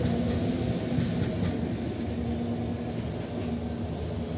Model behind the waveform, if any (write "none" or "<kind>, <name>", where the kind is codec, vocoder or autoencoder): none